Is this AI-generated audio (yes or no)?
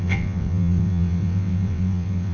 yes